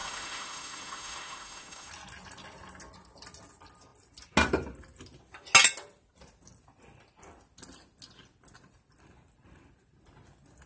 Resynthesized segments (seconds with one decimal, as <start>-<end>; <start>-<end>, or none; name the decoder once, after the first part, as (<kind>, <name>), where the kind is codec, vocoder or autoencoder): 0.0-1.9 (autoencoder, DAC-VAE)